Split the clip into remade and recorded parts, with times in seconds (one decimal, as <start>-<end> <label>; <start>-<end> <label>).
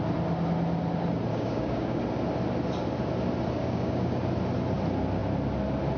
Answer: 0.0-1.3 recorded; 1.3-2.0 remade; 2.0-3.6 recorded; 3.6-4.2 remade; 4.2-6.0 recorded